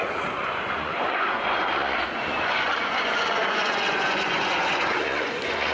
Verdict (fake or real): fake